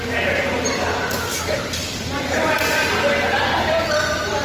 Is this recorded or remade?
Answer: recorded